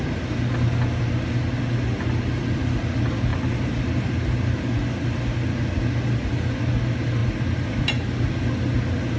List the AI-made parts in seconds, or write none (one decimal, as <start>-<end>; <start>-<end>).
none

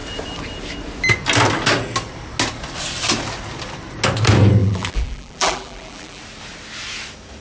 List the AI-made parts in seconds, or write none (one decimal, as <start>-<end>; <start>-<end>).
4.6-6.2

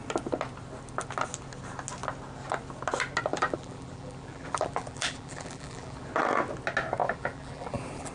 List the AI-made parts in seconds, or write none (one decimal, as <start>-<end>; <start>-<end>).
3.3-6.1; 7.0-8.1

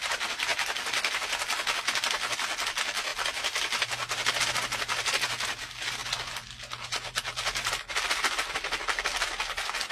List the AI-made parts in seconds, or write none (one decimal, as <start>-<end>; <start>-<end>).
none

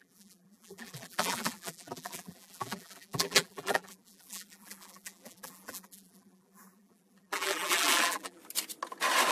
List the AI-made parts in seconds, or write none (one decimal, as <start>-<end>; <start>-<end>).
0.0-8.4

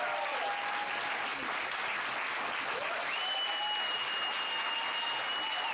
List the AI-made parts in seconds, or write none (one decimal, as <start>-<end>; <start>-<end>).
1.3-2.1

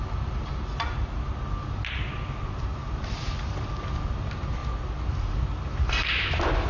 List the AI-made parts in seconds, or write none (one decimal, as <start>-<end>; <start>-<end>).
none

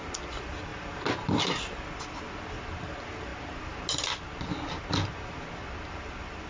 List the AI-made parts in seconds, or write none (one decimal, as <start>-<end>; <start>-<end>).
0.7-1.4